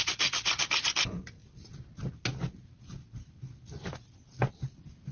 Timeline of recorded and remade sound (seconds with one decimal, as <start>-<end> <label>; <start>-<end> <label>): 0.0-5.1 recorded